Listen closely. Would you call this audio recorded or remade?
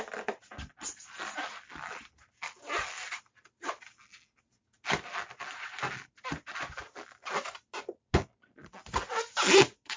recorded